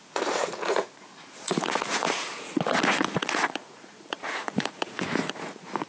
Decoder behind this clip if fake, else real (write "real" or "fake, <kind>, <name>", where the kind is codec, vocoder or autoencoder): fake, vocoder, Vocos